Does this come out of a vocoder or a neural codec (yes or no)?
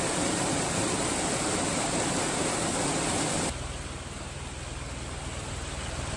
yes